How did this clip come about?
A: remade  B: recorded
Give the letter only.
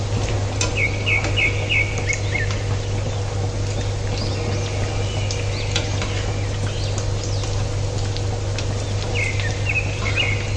B